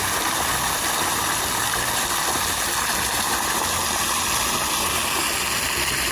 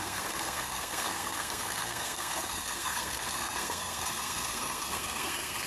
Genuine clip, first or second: first